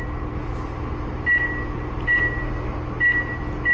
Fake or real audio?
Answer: real